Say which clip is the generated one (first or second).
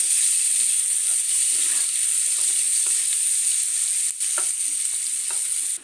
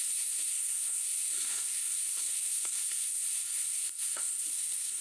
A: second